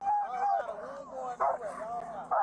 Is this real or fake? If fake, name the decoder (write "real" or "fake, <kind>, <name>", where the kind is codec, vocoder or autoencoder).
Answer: real